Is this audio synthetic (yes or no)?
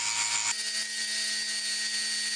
no